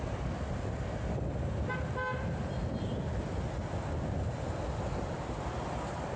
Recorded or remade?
recorded